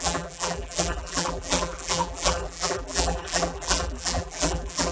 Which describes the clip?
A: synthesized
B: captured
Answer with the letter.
A